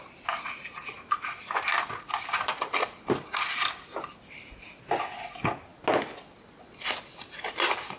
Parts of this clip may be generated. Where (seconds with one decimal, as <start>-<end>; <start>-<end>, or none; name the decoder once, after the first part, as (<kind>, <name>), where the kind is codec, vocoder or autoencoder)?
0.8-4.2 (vocoder, BigVGAN v2)